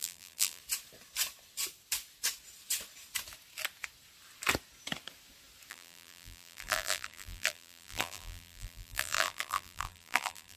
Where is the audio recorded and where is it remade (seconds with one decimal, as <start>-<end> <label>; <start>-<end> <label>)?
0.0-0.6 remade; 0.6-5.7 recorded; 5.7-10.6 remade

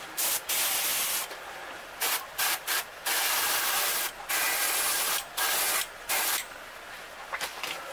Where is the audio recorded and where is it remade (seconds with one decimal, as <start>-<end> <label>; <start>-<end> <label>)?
0.0-0.9 recorded; 0.9-3.7 remade; 3.7-7.9 recorded

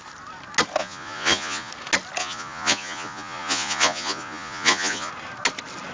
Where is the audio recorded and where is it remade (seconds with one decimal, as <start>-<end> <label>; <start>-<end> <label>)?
0.0-0.8 recorded; 0.8-1.7 remade; 1.7-2.2 recorded; 2.2-5.1 remade; 5.1-5.9 recorded